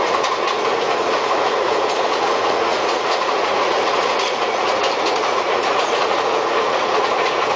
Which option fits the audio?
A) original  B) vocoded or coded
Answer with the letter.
B